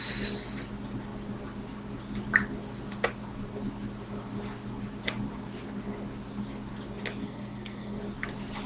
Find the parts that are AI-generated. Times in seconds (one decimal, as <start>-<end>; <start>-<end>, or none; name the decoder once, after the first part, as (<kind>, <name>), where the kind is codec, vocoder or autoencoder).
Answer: 7.2-8.0 (codec, SNAC)